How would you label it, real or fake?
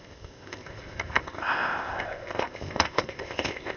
fake